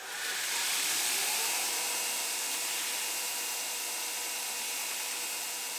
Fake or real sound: fake